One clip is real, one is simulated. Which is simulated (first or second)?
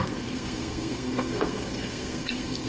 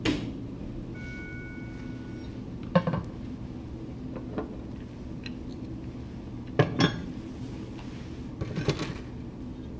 first